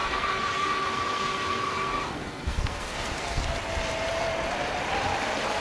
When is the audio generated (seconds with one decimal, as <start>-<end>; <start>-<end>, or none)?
0.0-3.4